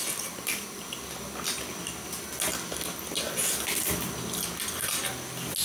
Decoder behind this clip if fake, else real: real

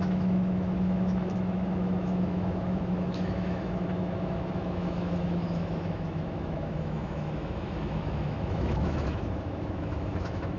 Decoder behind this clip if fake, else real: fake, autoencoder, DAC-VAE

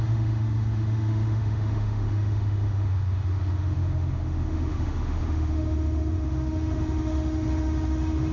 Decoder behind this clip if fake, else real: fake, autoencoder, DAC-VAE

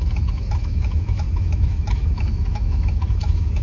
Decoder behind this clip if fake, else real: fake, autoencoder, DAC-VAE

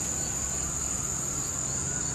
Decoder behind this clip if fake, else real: real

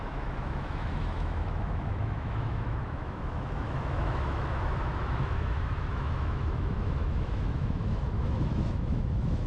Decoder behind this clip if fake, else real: fake, autoencoder, DAC-VAE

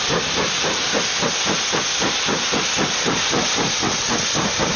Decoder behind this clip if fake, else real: real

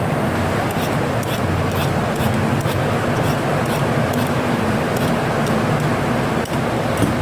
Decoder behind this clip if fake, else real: real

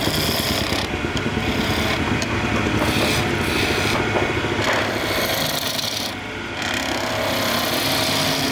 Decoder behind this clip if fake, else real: real